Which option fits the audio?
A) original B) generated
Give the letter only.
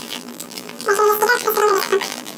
B